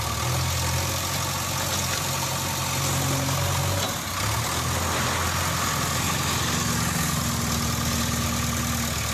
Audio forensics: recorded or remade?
recorded